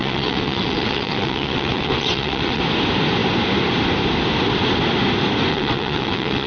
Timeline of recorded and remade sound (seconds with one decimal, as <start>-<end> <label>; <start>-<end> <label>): 0.0-2.6 remade; 2.6-5.5 recorded; 5.5-6.5 remade